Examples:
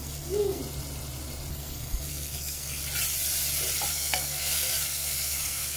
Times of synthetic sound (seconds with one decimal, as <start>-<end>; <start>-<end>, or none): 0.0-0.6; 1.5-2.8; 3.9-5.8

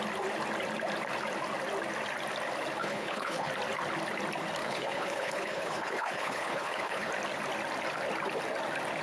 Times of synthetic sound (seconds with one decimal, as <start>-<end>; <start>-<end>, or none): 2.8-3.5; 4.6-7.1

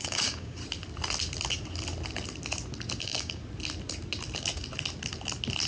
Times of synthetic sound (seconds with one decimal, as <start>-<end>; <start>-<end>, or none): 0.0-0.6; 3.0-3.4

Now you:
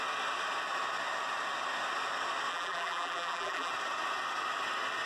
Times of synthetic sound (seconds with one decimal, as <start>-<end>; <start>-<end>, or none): 2.5-3.7